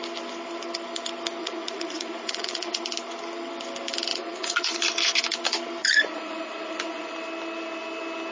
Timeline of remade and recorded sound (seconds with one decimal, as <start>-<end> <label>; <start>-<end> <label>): 0.0-1.4 recorded; 1.4-2.8 remade; 2.8-4.1 recorded; 4.1-4.8 remade; 4.8-5.8 recorded; 5.8-7.1 remade; 7.1-8.3 recorded